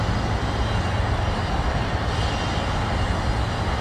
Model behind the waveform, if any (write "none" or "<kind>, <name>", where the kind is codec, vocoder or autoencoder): none